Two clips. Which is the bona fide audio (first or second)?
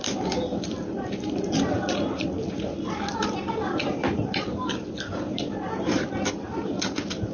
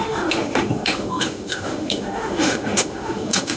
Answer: first